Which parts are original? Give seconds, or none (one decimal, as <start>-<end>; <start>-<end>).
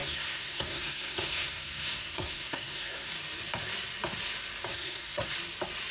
3.1-4.7; 5.3-5.9